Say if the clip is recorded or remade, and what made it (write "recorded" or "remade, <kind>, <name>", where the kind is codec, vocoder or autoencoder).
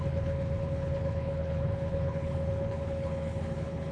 remade, codec, HILCodec